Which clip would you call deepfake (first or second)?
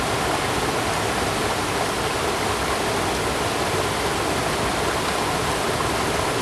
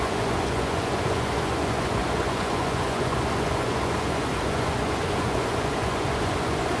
second